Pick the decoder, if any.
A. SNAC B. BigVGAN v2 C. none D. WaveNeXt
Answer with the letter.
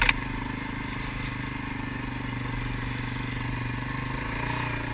C